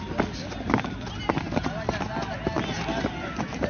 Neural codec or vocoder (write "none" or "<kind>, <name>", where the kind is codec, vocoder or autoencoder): none